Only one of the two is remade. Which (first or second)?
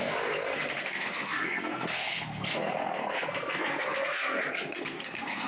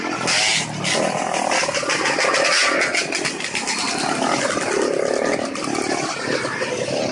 first